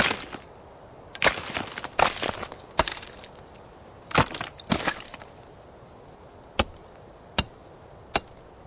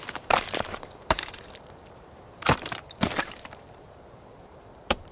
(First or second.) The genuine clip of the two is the first